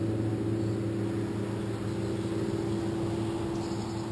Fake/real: real